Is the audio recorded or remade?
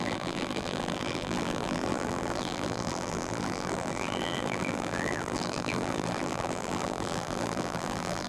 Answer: remade